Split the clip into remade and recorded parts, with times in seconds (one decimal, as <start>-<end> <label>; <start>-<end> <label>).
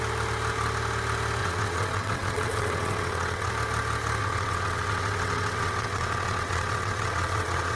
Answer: 0.0-1.4 recorded; 1.4-3.5 remade; 3.5-4.2 recorded; 4.2-7.8 remade